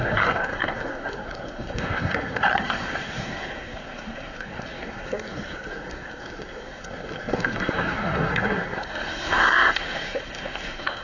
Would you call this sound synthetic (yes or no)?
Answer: yes